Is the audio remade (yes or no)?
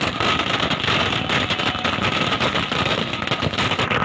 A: no